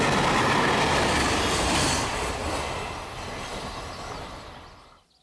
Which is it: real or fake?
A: real